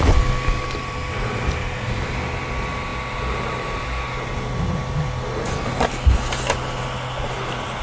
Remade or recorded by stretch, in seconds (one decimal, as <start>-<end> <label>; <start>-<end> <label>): 0.0-7.8 recorded